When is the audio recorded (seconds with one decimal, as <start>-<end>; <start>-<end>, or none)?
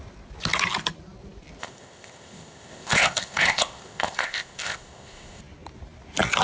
0.0-1.6; 5.4-6.4